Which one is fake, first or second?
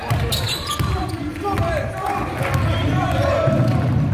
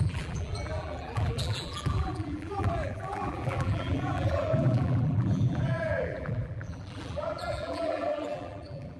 second